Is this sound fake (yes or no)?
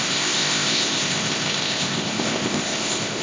yes